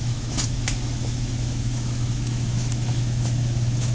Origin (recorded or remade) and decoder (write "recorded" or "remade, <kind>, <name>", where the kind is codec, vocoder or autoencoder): remade, autoencoder, DAC-VAE